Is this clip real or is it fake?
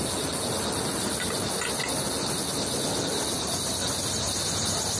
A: real